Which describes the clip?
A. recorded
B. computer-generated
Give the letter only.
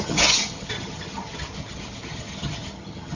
B